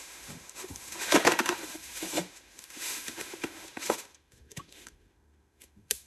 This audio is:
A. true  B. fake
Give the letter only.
B